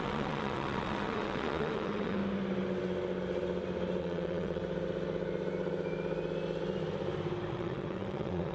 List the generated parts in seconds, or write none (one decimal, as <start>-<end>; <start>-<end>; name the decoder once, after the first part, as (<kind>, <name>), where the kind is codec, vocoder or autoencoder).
0.0-2.2 (vocoder, WaveNeXt); 4.0-4.6; 7.5-8.5